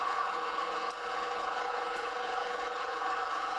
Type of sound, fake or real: fake